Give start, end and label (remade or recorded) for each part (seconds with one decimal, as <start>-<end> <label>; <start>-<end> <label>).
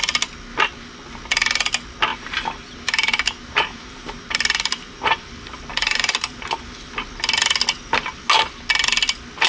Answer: 0.0-2.1 recorded; 2.1-5.3 remade; 5.3-5.7 recorded; 5.7-6.9 remade; 6.9-9.5 recorded